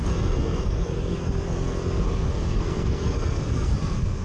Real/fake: fake